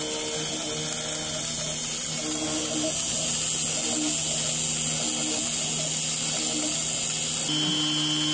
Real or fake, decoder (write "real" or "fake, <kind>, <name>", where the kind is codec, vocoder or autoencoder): real